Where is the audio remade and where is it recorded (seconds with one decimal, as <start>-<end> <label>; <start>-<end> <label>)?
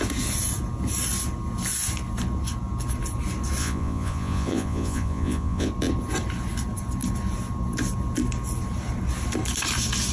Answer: 0.0-3.6 recorded; 3.6-5.7 remade; 5.7-10.1 recorded